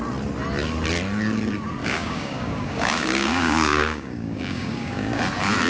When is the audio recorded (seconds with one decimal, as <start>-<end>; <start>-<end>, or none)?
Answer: 0.0-1.8; 5.2-5.7